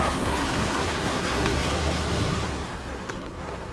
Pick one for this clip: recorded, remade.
remade